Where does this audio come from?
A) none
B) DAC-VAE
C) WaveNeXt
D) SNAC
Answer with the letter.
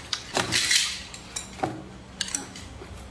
A